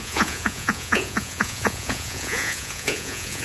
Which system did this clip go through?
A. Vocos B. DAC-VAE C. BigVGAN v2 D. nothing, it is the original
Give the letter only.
A